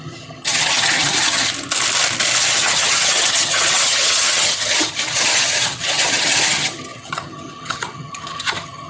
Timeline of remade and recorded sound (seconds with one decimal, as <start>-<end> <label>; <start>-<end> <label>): 0.0-1.5 remade; 1.5-2.4 recorded; 2.4-8.9 remade